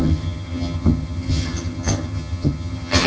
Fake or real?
fake